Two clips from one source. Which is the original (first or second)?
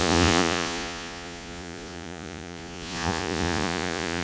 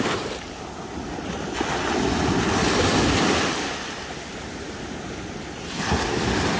second